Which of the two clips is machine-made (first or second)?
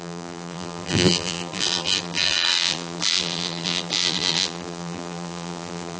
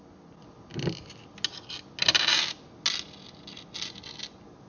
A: first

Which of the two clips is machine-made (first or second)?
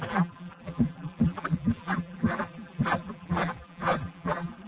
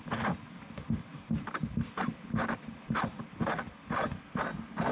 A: first